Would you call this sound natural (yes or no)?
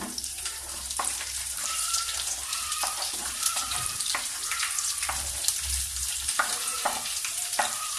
no